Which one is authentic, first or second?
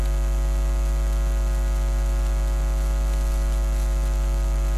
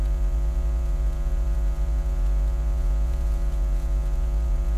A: first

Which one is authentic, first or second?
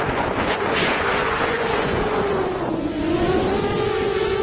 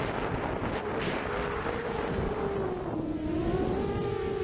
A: second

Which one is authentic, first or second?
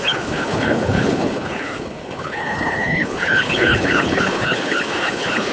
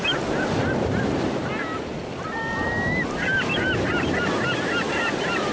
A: second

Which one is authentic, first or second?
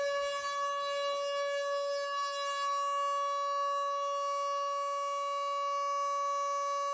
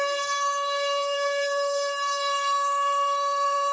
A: first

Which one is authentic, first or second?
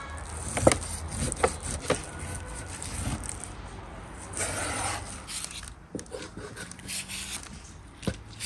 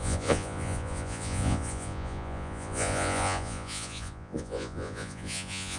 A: first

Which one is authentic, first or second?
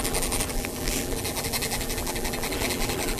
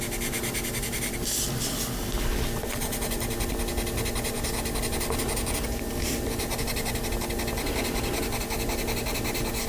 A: second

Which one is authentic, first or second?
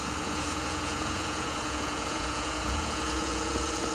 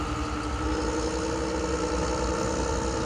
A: second